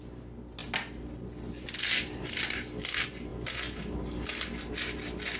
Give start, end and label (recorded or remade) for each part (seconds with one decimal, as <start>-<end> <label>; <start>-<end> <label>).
0.0-5.4 recorded